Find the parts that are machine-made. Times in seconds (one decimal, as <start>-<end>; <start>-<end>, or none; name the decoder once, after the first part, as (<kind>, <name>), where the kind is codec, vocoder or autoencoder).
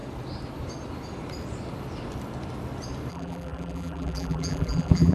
3.1-5.1 (vocoder, BigVGAN v2)